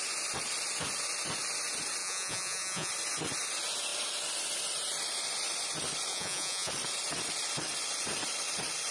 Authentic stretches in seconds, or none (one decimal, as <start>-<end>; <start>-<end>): 0.0-2.0; 2.9-6.1; 6.7-8.9